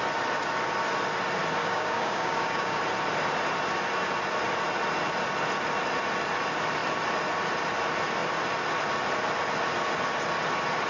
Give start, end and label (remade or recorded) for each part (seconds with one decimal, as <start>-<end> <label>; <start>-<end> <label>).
0.0-1.6 recorded; 1.6-2.8 remade; 2.8-10.9 recorded